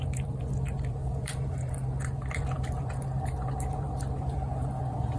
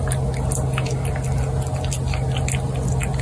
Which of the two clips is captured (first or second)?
second